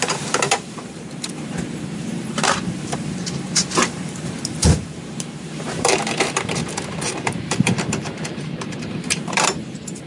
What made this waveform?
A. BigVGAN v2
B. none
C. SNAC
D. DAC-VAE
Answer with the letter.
A